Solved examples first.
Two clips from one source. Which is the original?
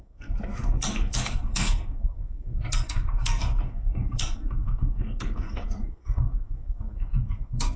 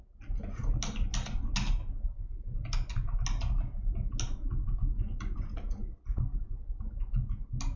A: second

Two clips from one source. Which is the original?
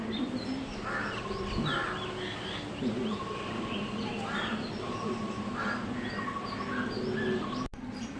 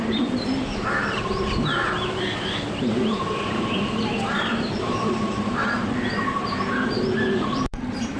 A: first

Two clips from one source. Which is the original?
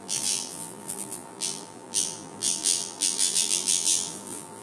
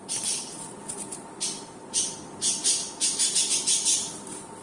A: second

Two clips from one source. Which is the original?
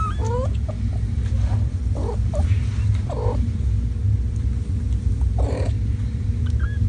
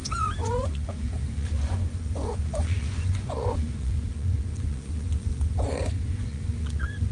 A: first